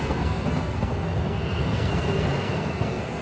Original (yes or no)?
no